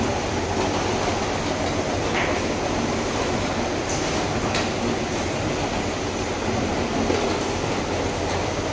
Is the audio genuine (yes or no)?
yes